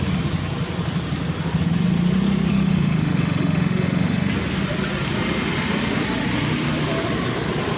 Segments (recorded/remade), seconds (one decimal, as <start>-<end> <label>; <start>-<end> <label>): 0.0-2.5 recorded; 2.5-4.3 remade; 4.3-7.8 recorded